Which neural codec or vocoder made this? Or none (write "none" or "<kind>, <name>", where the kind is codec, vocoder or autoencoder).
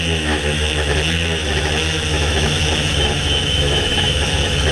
autoencoder, DAC-VAE